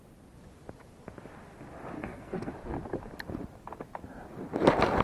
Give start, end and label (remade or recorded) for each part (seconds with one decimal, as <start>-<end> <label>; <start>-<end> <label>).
0.0-2.0 recorded; 2.0-2.5 remade; 2.5-5.0 recorded